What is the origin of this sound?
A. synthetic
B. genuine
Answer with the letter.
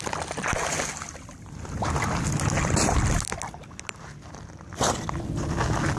B